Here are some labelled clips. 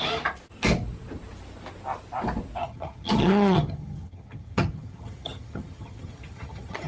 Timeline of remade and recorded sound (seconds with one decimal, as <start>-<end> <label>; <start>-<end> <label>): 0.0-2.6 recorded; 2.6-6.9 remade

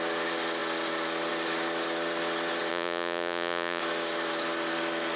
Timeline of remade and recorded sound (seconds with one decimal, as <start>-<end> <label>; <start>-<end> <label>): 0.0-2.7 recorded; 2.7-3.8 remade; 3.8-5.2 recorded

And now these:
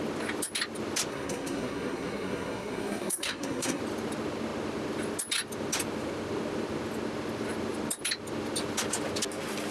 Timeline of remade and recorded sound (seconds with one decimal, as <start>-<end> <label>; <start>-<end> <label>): 0.0-1.1 recorded; 1.1-3.8 remade; 3.8-9.7 recorded